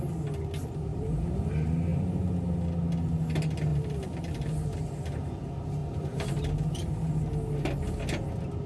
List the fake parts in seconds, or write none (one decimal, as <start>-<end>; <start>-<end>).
0.9-1.5; 1.9-2.5; 3.7-4.9; 5.8-7.3